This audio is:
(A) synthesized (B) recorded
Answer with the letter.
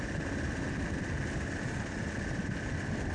B